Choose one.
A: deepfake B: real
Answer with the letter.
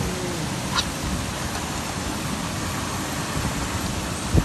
B